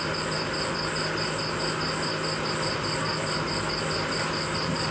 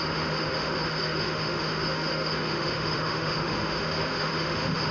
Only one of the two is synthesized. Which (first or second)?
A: second